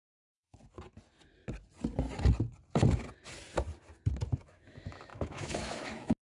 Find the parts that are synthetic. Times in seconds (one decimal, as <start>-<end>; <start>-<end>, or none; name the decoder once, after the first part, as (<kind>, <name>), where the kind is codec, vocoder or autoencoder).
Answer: 0.0-0.6 (autoencoder, DAC-VAE); 4.4-6.3